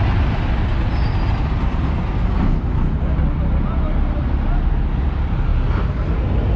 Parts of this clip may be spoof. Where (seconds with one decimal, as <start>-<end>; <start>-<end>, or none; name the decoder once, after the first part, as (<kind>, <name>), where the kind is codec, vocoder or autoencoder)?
none